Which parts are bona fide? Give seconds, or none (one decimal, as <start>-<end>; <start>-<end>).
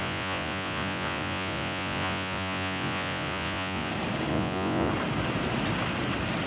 3.9-4.3; 4.9-6.5